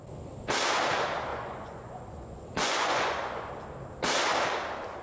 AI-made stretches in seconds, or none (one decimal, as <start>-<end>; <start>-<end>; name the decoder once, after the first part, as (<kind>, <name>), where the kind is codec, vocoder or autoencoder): 1.3-3.5 (vocoder, Vocos)